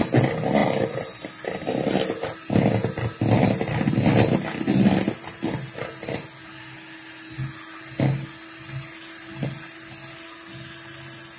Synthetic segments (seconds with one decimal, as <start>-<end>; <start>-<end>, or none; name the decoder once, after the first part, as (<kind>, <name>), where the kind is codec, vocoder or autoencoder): none